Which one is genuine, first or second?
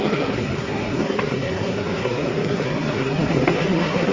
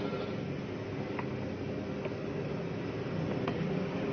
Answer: second